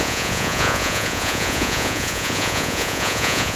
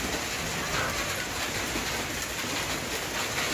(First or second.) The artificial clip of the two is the first